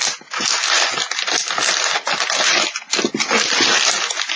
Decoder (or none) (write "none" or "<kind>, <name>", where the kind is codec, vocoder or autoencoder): none